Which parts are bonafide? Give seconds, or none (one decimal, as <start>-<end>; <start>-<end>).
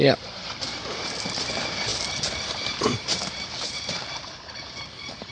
none